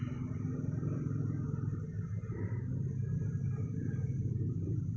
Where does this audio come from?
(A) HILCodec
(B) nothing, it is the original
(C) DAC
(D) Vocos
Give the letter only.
B